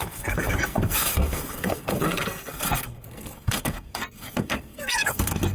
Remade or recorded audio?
remade